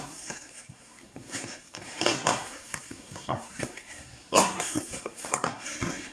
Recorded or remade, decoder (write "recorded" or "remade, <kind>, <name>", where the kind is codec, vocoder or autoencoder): remade, codec, SNAC